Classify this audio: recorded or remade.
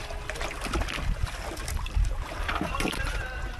recorded